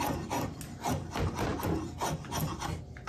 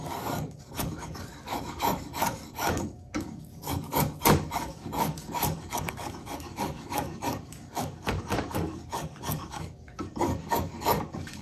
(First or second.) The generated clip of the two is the second